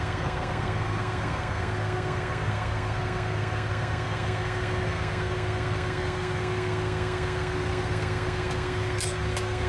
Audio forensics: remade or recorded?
remade